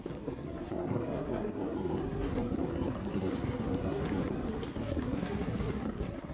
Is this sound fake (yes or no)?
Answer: yes